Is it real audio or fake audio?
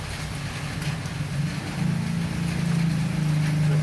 real